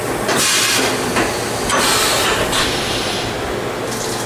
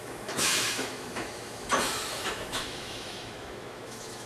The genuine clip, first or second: first